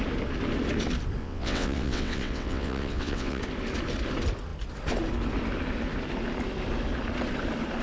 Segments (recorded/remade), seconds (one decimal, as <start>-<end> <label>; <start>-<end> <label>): 0.0-1.2 recorded; 1.2-3.4 remade; 3.4-7.8 recorded